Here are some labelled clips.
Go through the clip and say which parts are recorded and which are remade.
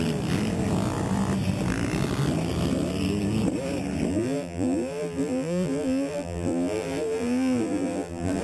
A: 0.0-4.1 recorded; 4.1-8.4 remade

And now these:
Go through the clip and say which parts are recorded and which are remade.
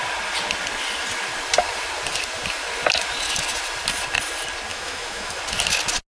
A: 0.0-4.7 recorded; 4.7-5.4 remade; 5.4-6.1 recorded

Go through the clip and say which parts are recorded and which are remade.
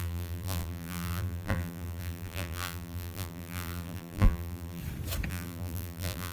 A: 0.0-4.8 remade; 4.8-5.3 recorded; 5.3-6.3 remade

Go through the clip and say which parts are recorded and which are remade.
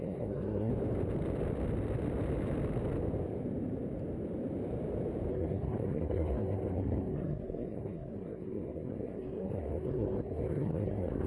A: 0.0-0.7 remade; 0.7-5.3 recorded; 5.3-11.3 remade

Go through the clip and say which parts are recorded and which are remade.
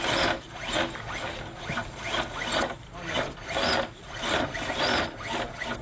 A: 0.0-5.8 recorded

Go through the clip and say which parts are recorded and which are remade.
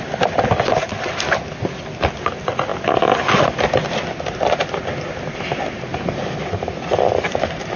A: 0.0-7.8 recorded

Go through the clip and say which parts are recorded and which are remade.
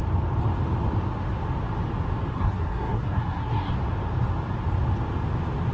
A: 0.0-2.3 recorded; 2.3-3.7 remade; 3.7-5.7 recorded